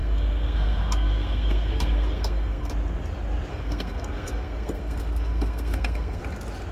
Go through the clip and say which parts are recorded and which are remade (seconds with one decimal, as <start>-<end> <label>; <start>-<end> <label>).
0.0-2.7 remade; 2.7-3.5 recorded; 3.5-6.2 remade; 6.2-6.7 recorded